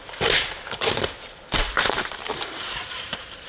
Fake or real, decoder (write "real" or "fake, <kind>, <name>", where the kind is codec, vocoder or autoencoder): fake, vocoder, BigVGAN v2